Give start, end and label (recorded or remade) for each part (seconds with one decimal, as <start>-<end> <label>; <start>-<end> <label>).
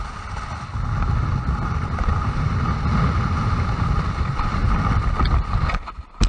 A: 0.0-6.3 recorded